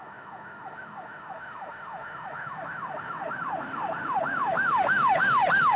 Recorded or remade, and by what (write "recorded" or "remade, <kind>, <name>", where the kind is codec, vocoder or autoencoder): remade, autoencoder, DAC-VAE